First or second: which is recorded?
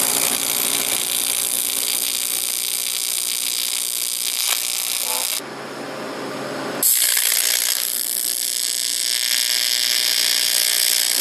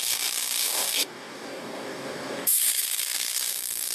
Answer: first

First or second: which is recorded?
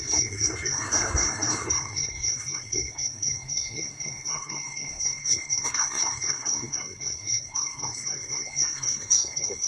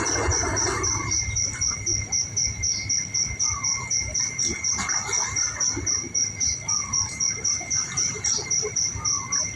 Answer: second